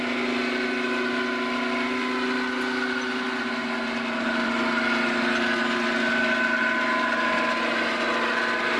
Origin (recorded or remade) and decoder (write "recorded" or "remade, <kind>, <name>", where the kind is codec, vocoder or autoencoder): recorded